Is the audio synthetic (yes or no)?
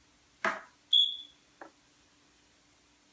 no